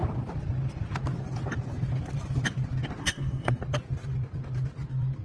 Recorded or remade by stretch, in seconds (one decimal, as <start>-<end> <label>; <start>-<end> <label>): 0.0-3.0 recorded; 3.0-3.6 remade; 3.6-5.2 recorded